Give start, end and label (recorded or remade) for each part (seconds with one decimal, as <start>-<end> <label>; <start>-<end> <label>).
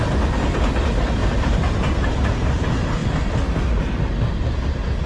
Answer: 0.0-1.2 recorded; 1.2-2.5 remade; 2.5-5.1 recorded